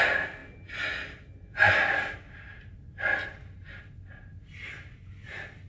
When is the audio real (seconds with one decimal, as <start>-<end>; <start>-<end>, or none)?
0.0-5.7